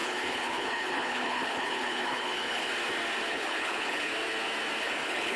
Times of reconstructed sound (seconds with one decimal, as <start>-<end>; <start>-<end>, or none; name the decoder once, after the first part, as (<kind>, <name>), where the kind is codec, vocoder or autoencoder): 0.0-2.7 (codec, HILCodec); 3.3-4.1; 4.8-5.4